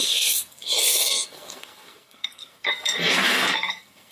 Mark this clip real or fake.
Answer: fake